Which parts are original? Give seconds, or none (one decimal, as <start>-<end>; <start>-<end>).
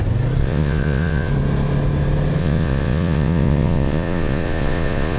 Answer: 0.0-0.4; 1.3-2.4